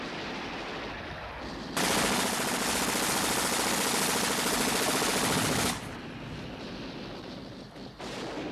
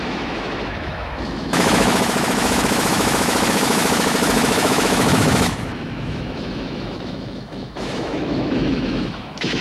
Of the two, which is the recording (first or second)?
first